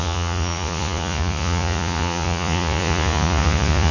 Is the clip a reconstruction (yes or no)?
yes